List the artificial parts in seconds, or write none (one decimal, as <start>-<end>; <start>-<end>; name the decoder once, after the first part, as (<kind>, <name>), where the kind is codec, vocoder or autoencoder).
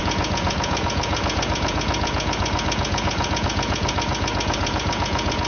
0.0-5.5 (vocoder, Vocos)